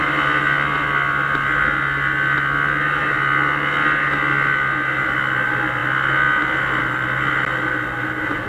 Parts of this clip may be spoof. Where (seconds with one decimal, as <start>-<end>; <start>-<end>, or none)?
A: none